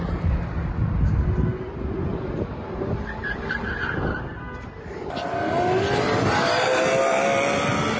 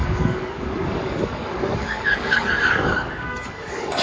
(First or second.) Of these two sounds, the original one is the first